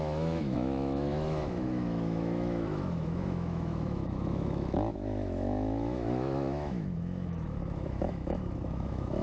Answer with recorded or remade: remade